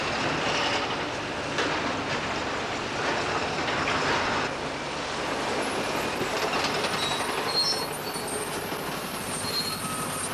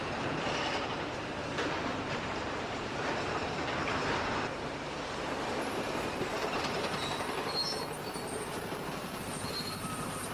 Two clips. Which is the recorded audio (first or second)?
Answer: first